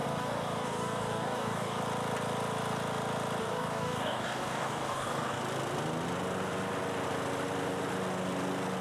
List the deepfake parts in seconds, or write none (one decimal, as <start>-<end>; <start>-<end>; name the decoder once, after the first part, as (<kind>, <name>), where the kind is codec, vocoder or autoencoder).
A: 0.0-1.8 (codec, DAC); 3.4-5.4